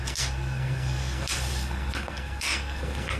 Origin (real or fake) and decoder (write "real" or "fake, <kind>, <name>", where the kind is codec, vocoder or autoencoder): fake, codec, SNAC